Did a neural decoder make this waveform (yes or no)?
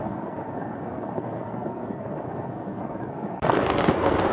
yes